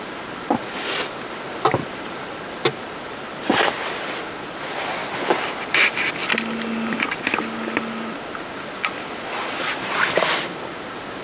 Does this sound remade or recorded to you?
recorded